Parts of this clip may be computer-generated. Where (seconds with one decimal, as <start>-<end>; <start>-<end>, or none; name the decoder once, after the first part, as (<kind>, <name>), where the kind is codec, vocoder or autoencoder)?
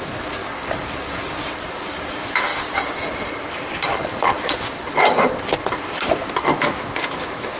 0.0-0.4 (autoencoder, DAC-VAE); 2.1-2.5; 7.1-7.6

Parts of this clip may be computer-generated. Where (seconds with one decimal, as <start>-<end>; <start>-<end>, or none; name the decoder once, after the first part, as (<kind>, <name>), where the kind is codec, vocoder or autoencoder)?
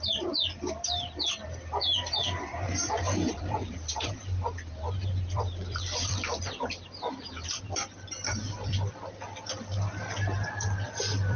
0.0-2.2 (vocoder, BigVGAN v2); 2.7-11.4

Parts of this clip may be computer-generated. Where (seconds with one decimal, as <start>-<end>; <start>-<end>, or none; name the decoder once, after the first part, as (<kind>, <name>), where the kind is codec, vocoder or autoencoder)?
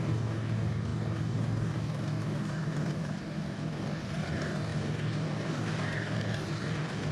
0.0-7.1 (codec, DAC)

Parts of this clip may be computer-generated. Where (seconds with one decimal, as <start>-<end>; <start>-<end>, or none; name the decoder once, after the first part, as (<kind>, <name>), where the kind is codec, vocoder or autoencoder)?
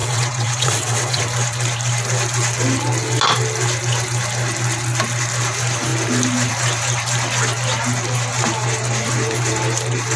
0.0-1.2 (vocoder, WaveNeXt)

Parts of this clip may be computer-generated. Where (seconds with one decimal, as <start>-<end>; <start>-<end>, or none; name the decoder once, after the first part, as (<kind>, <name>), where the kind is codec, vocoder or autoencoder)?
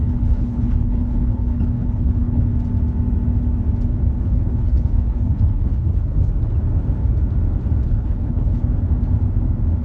0.0-2.5 (codec, HILCodec); 4.2-6.3; 7.8-8.6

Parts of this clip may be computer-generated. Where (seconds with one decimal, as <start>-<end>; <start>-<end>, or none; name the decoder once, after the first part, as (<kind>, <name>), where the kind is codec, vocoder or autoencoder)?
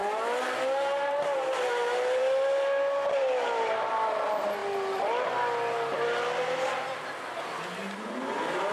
none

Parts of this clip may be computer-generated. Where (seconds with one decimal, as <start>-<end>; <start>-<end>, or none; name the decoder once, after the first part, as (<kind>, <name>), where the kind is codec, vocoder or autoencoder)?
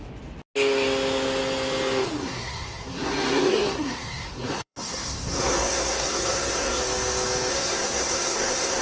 2.2-6.8 (codec, SNAC); 7.5-8.8